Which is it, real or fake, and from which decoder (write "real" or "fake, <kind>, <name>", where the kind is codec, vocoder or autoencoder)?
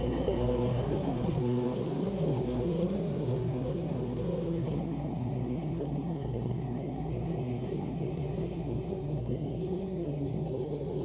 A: fake, codec, SNAC